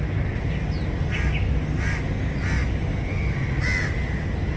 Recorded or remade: recorded